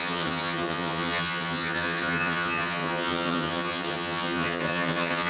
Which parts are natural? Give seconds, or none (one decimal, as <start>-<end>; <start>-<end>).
none

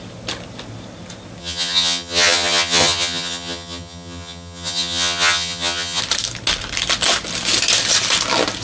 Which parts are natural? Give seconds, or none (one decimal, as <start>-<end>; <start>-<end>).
0.0-1.4; 6.0-8.6

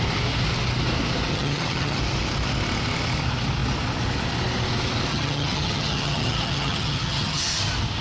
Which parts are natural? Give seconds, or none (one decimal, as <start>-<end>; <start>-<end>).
0.0-1.3; 2.0-5.1; 7.6-8.0